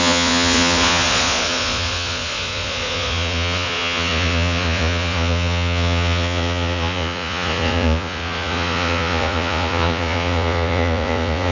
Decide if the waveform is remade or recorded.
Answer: remade